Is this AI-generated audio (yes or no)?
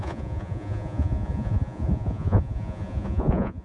yes